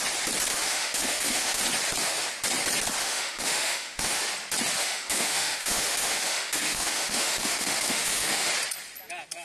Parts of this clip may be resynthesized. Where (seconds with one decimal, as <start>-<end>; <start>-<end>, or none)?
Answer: 0.5-1.6; 3.0-4.2; 4.8-8.5